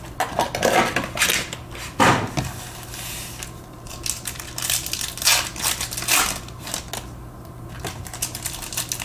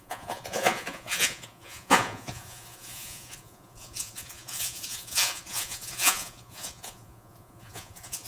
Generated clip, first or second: second